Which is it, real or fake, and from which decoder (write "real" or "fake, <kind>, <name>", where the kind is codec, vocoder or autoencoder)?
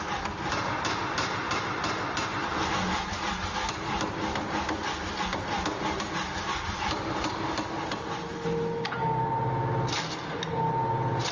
real